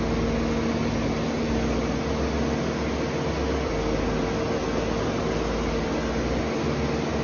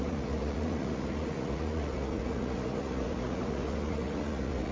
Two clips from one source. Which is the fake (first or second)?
second